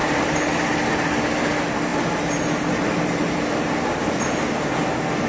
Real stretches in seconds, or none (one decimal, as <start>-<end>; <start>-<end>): 0.5-1.9; 3.4-5.3